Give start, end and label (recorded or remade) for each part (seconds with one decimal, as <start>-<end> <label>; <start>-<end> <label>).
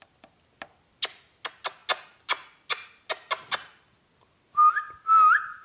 0.0-5.6 recorded